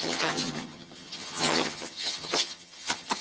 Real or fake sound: fake